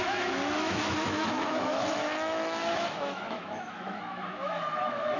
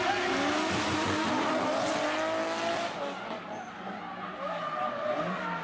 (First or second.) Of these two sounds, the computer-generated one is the first